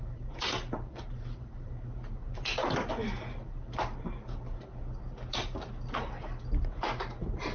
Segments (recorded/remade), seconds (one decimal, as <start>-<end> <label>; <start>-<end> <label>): 0.0-7.5 recorded